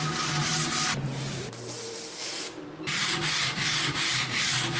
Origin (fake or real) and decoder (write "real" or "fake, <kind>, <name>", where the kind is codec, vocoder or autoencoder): fake, vocoder, BigVGAN v2